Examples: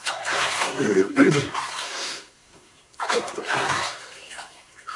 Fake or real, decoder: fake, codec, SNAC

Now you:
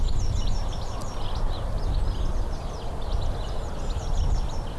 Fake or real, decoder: real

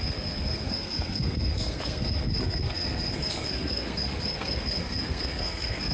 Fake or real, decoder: fake, codec, SNAC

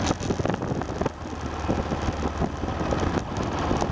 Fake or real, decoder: real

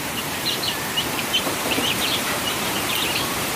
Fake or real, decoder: fake, vocoder, BigVGAN v2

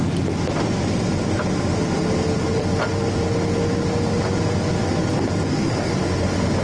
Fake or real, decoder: real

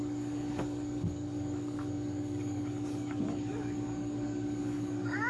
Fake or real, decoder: fake, codec, DAC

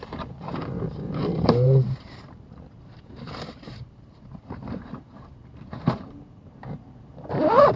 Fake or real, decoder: fake, vocoder, BigVGAN v2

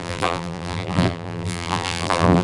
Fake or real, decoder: fake, vocoder, BigVGAN v2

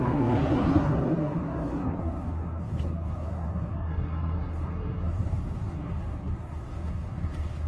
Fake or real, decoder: fake, codec, SNAC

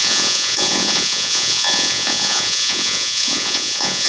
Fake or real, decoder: fake, vocoder, Vocos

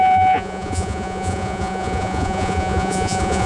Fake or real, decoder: fake, vocoder, Vocos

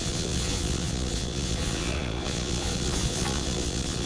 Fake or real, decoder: fake, vocoder, Vocos